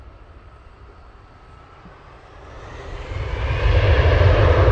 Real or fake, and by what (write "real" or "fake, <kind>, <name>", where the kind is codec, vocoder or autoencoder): real